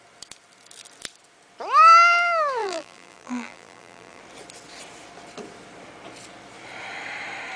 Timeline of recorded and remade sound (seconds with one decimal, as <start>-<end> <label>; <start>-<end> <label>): 0.0-2.6 recorded; 2.6-4.2 remade; 4.2-7.6 recorded